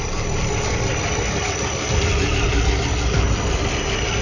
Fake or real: real